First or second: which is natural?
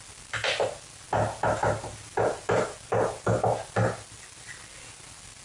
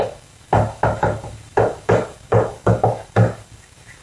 first